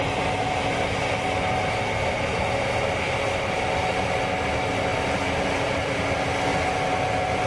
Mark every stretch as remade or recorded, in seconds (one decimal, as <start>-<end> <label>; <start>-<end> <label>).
0.0-7.5 recorded